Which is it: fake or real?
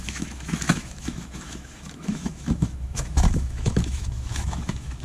fake